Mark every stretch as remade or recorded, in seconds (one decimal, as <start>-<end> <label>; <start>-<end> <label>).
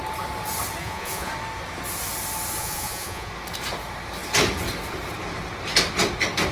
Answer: 0.0-0.8 recorded; 0.8-1.3 remade; 1.3-2.6 recorded; 2.6-3.3 remade; 3.3-6.5 recorded